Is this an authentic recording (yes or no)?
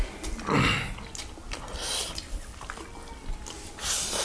yes